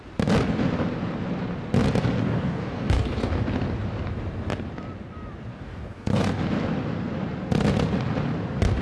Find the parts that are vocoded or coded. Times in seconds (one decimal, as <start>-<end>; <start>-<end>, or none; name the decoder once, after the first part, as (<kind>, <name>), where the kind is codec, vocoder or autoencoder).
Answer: 2.2-3.3 (codec, DAC); 5.5-6.4